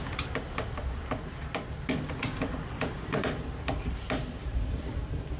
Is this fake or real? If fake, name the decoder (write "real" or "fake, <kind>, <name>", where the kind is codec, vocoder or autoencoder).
fake, vocoder, BigVGAN v2